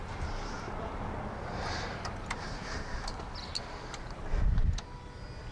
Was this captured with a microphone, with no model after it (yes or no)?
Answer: yes